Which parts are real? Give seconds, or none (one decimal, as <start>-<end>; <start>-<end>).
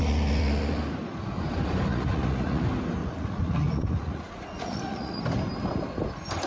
0.8-1.9; 2.6-3.0; 5.2-6.5